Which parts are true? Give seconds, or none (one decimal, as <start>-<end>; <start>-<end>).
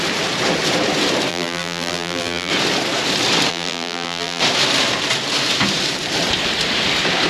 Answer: 0.0-1.3; 2.5-3.5; 4.4-7.3